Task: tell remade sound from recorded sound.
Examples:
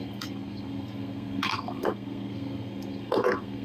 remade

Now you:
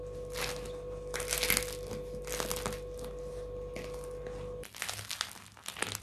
recorded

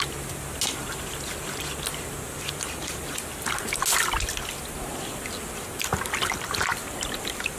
recorded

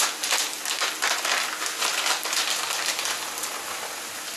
recorded